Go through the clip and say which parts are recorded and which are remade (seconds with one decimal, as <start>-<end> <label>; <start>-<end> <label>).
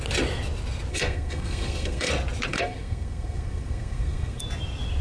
0.0-0.9 recorded; 0.9-2.1 remade; 2.1-2.5 recorded; 2.5-4.4 remade; 4.4-5.0 recorded